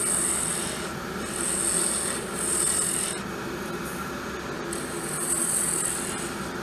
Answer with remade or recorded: recorded